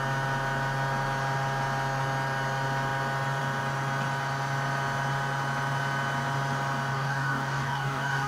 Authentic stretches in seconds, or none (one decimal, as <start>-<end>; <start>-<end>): 0.0-6.9